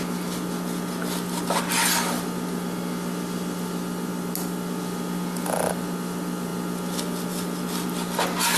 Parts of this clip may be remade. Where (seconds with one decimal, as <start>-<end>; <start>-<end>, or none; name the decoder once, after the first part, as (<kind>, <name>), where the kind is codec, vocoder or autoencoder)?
none